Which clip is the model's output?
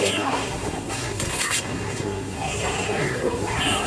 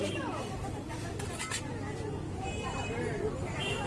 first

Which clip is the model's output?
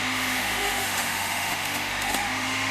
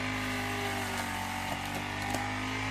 first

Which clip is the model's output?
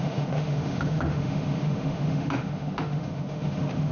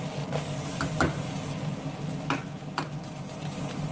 first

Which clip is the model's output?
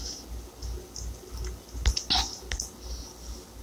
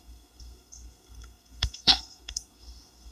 second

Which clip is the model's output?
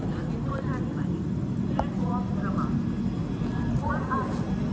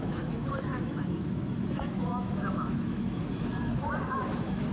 second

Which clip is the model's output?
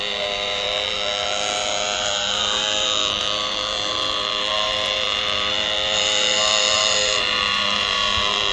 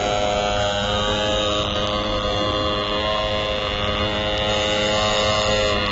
first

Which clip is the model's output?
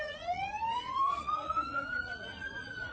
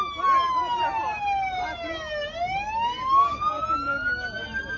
first